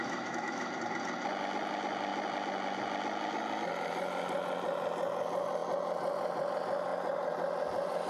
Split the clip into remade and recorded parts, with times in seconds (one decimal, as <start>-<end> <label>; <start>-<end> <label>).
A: 0.0-0.7 remade; 0.7-8.1 recorded

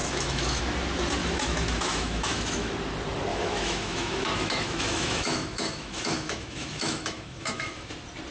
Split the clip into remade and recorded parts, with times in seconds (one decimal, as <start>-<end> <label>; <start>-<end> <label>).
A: 0.0-0.6 remade; 0.6-1.2 recorded; 1.2-2.7 remade; 2.7-3.3 recorded; 3.3-7.9 remade; 7.9-8.3 recorded

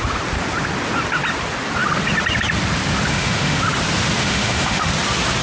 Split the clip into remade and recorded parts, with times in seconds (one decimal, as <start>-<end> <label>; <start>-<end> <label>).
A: 0.0-3.1 recorded; 3.1-3.6 remade; 3.6-4.2 recorded; 4.2-4.9 remade; 4.9-5.4 recorded

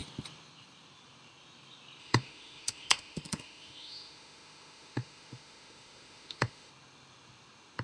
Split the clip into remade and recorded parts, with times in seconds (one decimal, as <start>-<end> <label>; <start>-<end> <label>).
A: 0.0-2.0 recorded; 2.0-6.7 remade; 6.7-7.8 recorded